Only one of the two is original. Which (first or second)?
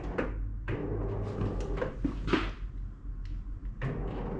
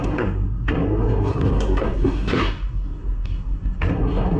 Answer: first